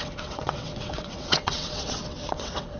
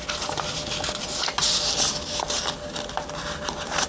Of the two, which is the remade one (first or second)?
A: first